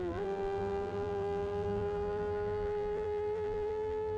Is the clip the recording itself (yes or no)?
no